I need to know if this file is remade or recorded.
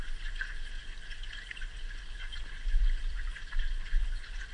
recorded